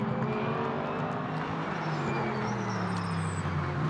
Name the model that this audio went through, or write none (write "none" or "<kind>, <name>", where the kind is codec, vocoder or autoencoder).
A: none